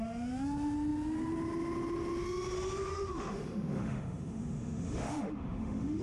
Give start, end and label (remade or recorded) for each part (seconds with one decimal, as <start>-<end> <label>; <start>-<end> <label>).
0.0-2.9 recorded; 2.9-6.0 remade